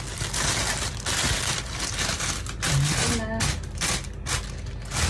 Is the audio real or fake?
real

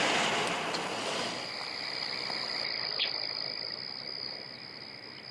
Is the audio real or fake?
real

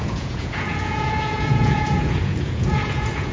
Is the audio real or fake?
fake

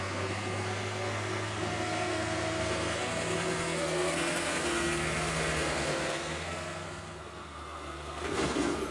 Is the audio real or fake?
fake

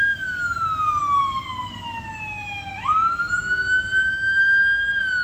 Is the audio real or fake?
real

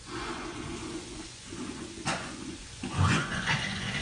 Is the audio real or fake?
fake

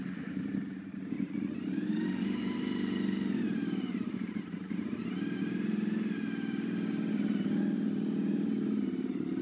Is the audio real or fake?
fake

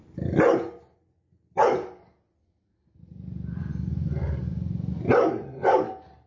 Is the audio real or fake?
real